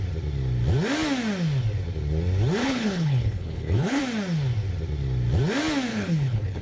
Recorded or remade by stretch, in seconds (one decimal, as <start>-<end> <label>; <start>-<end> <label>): 0.0-2.6 recorded; 2.6-4.0 remade; 4.0-5.9 recorded; 5.9-6.6 remade